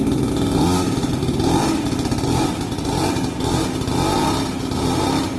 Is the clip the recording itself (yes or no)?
yes